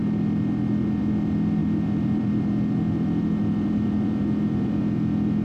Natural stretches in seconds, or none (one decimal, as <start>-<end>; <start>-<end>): 0.0-1.6; 4.8-5.4